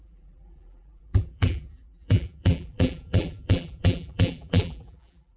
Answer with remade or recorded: remade